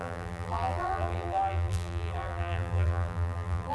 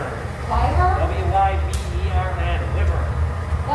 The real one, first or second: second